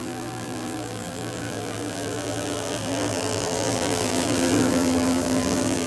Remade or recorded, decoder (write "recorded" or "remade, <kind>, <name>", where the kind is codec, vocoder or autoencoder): remade, vocoder, BigVGAN v2